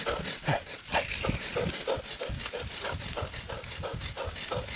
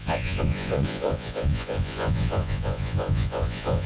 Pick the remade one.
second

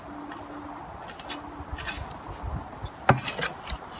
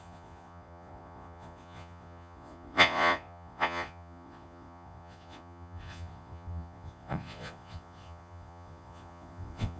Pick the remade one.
second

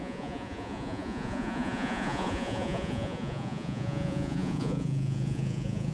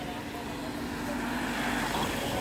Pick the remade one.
first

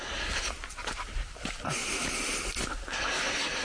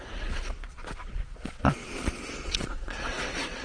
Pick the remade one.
second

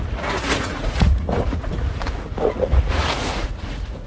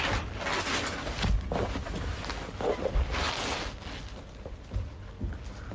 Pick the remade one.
first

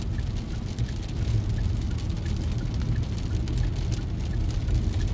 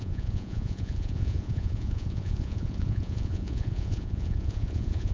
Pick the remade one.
second